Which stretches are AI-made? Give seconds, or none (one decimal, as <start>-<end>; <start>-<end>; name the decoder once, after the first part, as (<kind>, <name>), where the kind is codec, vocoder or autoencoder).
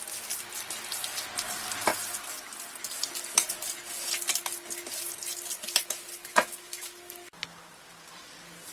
6.2-6.8 (autoencoder, DAC-VAE)